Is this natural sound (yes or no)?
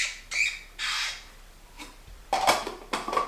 yes